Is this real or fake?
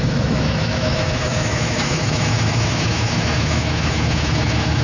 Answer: fake